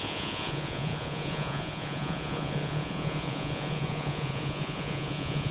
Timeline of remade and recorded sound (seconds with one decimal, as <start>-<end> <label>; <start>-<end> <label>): 0.0-5.5 remade